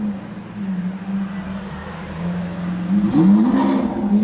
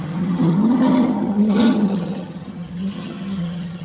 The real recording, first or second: first